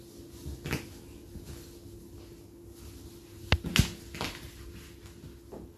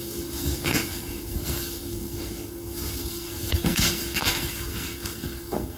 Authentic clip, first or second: first